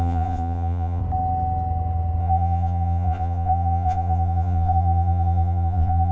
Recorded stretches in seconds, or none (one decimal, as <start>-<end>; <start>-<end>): 1.0-2.2